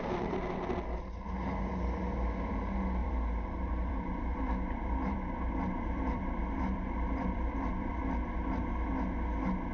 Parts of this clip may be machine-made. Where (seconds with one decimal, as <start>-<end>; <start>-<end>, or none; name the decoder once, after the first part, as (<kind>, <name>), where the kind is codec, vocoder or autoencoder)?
3.0-8.0 (vocoder, BigVGAN v2)